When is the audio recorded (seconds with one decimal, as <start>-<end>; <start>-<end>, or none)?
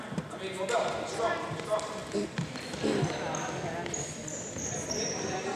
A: 0.0-2.0